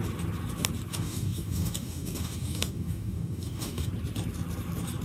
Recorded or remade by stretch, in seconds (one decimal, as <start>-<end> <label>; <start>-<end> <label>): 0.0-0.9 recorded; 0.9-3.9 remade; 3.9-5.0 recorded